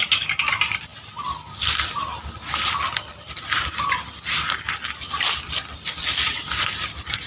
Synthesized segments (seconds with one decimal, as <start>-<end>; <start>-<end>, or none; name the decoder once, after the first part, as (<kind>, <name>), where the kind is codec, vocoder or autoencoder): none